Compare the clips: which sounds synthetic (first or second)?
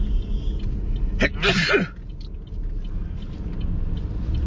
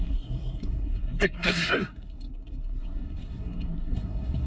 second